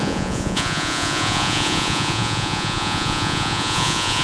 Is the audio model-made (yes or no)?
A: yes